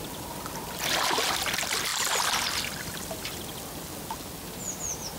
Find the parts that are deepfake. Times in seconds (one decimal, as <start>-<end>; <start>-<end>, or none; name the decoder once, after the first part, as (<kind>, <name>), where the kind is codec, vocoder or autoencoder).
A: none